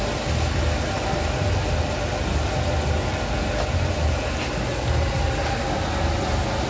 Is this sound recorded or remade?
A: recorded